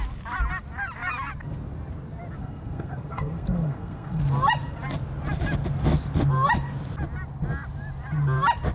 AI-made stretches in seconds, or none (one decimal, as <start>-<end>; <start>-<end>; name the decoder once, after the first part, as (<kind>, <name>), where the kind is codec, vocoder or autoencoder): 2.4-4.2 (codec, SNAC)